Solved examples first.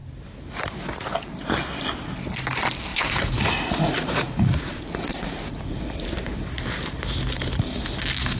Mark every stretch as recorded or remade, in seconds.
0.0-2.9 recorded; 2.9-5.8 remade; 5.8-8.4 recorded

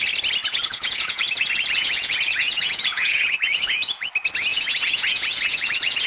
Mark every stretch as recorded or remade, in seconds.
0.0-0.4 recorded; 0.4-4.1 remade; 4.1-4.5 recorded; 4.5-6.1 remade

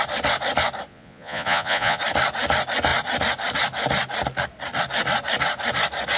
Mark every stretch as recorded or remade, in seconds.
0.0-0.9 recorded; 0.9-2.0 remade; 2.0-6.2 recorded

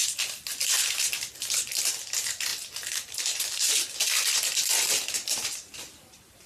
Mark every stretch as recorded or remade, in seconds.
0.0-2.5 recorded; 2.5-6.5 remade

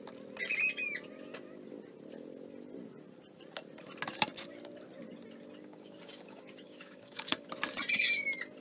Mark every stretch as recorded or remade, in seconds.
0.0-5.6 recorded; 5.6-7.5 remade; 7.5-8.6 recorded

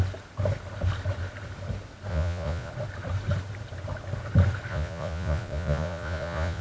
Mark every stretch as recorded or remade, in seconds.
0.0-2.1 recorded; 2.1-2.7 remade; 2.7-4.7 recorded; 4.7-6.6 remade

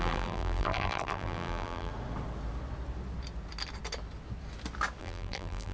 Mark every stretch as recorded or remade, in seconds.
0.0-1.9 remade; 1.9-5.0 recorded; 5.0-5.7 remade